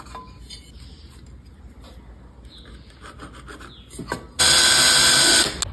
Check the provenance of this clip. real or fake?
real